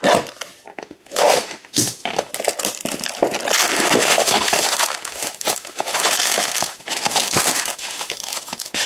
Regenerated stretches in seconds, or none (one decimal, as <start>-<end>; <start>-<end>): 0.7-2.3; 3.6-8.9